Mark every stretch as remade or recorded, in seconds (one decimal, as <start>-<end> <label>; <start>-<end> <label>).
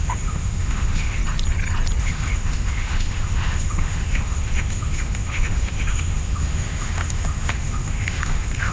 0.0-1.2 remade; 1.2-2.0 recorded; 2.0-8.7 remade